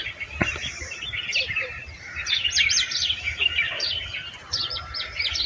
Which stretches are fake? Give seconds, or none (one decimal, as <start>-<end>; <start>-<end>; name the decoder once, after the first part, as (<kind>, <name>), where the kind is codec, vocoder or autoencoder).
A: 0.0-0.9 (vocoder, BigVGAN v2); 1.6-4.9